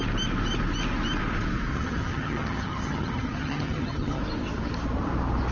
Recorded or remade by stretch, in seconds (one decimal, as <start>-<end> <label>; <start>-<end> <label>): 0.0-1.7 recorded; 1.7-4.2 remade; 4.2-5.5 recorded